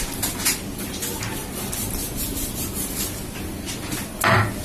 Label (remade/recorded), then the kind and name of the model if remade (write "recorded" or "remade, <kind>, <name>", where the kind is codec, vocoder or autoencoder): recorded